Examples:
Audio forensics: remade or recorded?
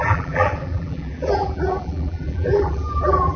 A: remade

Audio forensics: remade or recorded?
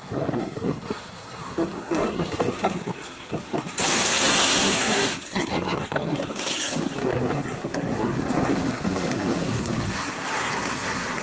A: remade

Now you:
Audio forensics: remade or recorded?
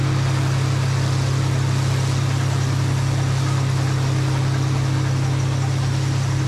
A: recorded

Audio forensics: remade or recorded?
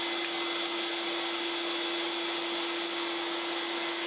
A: recorded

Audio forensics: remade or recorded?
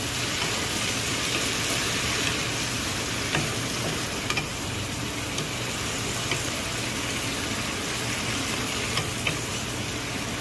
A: recorded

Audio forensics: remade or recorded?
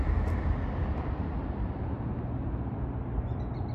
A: recorded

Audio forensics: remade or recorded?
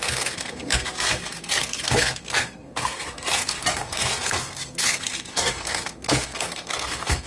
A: remade